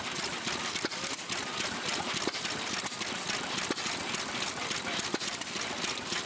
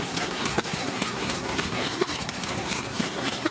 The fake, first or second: second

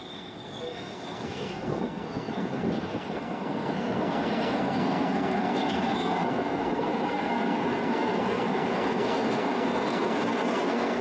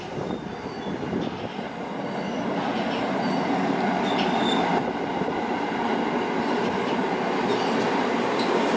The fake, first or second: first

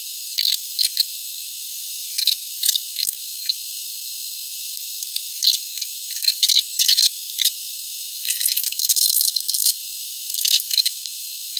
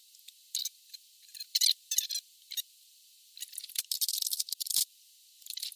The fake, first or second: first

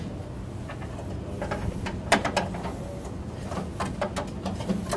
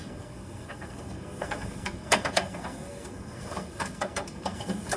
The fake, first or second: second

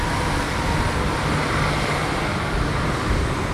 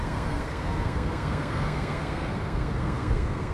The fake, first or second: second